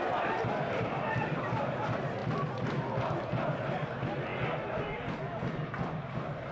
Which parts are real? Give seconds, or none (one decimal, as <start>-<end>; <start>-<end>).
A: 2.2-3.7; 4.3-4.8